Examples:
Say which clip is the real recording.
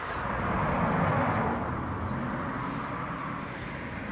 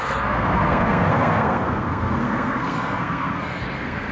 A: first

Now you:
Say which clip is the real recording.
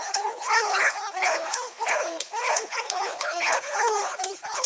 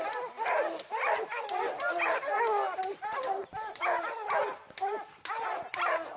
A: second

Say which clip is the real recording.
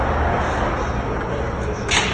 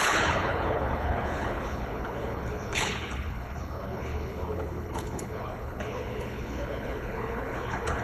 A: first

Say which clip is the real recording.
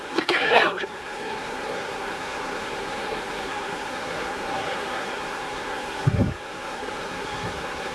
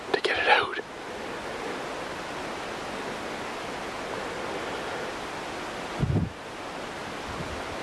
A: second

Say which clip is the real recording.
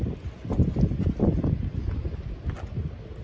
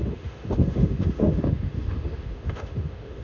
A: first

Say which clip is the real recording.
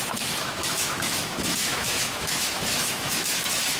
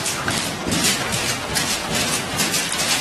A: second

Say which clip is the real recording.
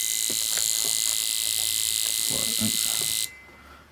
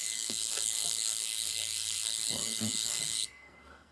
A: first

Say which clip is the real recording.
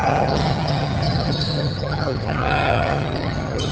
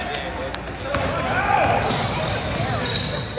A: second